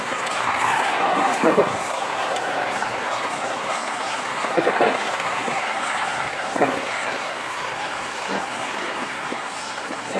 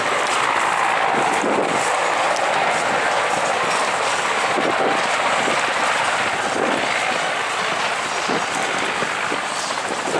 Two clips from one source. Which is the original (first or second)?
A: second